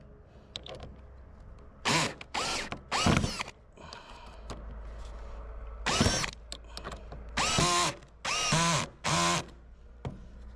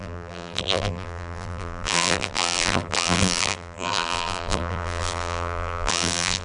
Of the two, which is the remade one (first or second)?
second